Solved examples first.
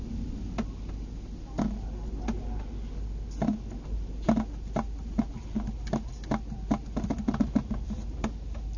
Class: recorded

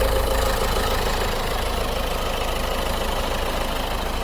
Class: recorded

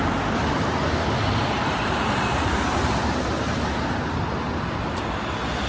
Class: recorded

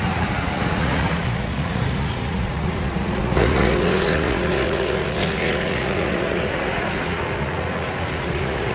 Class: remade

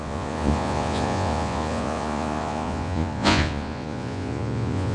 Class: remade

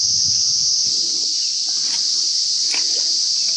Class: recorded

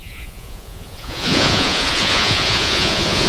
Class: remade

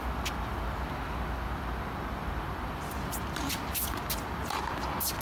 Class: recorded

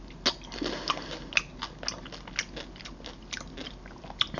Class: recorded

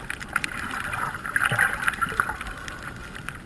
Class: recorded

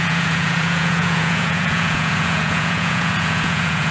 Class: remade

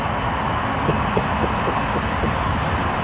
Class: recorded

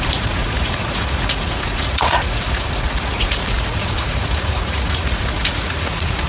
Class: remade